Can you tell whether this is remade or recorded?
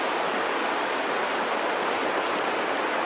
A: recorded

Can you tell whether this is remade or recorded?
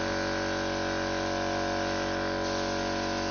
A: recorded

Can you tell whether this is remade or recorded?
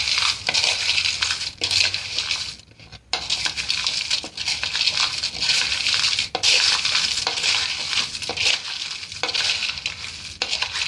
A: recorded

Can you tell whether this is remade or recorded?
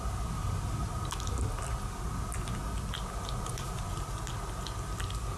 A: recorded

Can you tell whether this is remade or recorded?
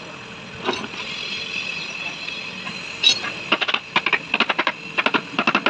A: recorded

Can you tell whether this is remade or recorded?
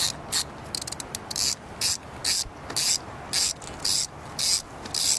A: recorded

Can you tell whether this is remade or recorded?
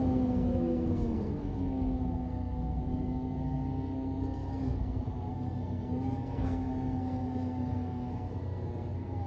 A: remade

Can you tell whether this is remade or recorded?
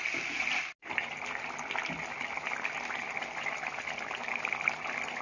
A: recorded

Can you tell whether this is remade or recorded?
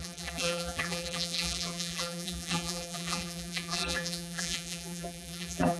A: remade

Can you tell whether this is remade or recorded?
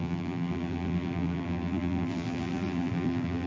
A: remade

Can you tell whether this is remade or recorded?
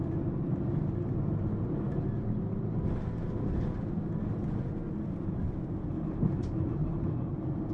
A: recorded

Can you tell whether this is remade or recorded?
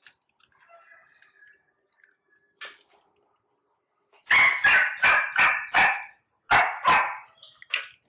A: recorded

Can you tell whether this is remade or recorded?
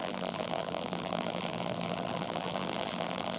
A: remade